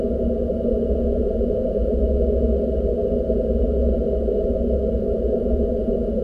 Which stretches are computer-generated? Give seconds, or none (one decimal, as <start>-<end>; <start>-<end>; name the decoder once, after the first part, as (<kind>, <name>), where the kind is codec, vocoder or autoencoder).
1.2-1.9 (vocoder, Vocos); 5.0-6.2